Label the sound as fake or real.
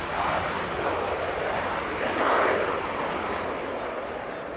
real